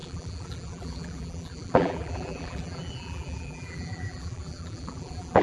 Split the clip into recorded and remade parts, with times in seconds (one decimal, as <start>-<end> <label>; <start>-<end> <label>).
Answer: 0.0-5.4 remade